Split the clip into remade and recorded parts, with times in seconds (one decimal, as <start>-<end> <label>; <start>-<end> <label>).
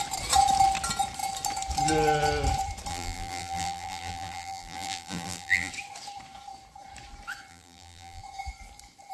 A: 0.0-2.9 recorded; 2.9-5.7 remade; 5.7-7.5 recorded; 7.5-8.2 remade; 8.2-9.1 recorded